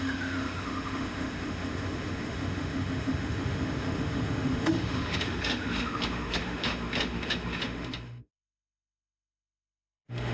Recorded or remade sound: remade